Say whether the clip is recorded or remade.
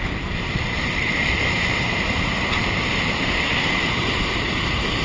remade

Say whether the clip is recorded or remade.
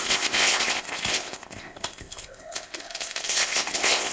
remade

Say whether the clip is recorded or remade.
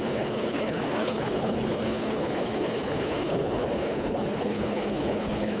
remade